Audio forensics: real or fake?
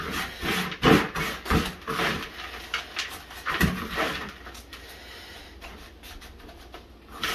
real